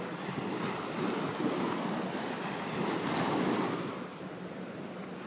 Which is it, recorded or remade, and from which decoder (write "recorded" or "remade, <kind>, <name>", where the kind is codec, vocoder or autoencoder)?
recorded